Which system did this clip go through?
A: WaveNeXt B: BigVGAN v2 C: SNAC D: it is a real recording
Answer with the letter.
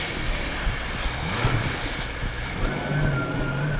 D